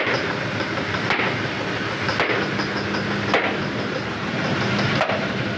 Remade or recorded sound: recorded